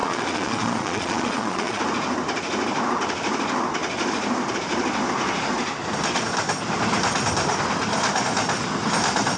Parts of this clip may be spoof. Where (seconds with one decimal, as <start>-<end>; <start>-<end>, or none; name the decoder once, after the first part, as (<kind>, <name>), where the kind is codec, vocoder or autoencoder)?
0.0-1.8 (vocoder, Vocos)